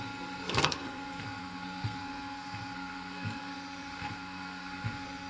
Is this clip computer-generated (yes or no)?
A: yes